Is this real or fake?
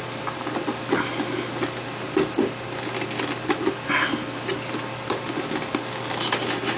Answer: real